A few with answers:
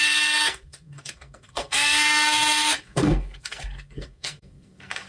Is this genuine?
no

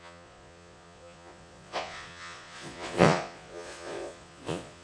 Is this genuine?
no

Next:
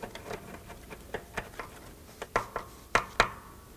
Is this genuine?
yes